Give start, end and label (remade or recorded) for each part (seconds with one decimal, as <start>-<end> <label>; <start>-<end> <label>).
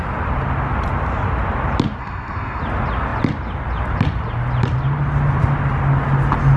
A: 0.0-2.0 recorded; 2.0-2.6 remade; 2.6-6.6 recorded